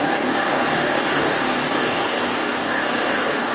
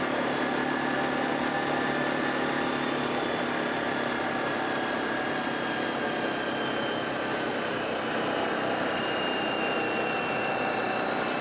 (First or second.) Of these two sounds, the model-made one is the first